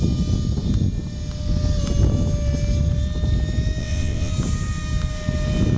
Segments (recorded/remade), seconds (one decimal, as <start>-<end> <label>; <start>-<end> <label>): 0.0-3.8 recorded; 3.8-4.3 remade; 4.3-5.8 recorded